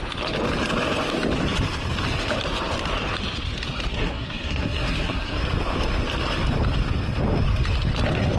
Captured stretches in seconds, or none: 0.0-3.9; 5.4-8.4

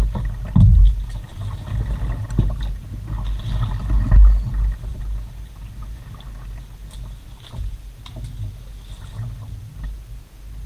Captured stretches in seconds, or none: 0.0-10.7

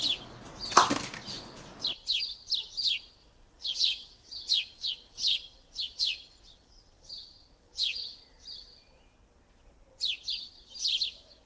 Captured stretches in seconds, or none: 0.0-3.2; 8.2-11.5

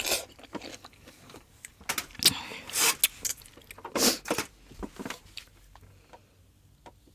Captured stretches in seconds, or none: 0.0-0.7; 1.8-7.1